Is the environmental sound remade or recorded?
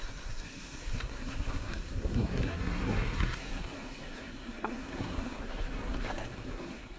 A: remade